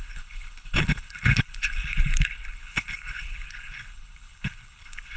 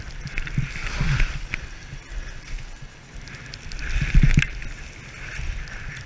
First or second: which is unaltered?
second